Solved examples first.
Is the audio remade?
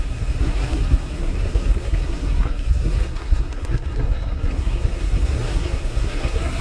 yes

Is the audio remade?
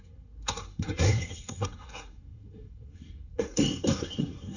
yes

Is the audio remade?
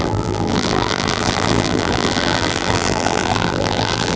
yes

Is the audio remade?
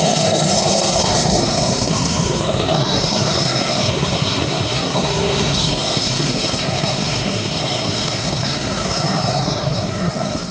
yes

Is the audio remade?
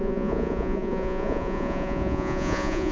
yes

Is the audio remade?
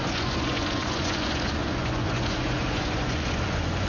yes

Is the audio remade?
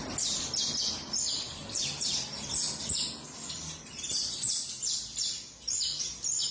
no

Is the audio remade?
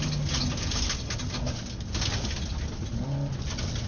no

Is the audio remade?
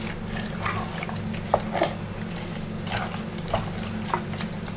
no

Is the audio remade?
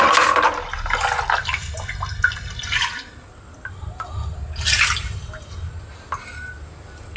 no